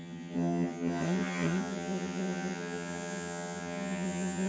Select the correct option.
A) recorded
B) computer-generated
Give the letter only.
B